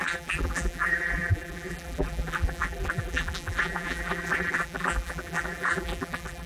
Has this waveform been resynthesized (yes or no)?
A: yes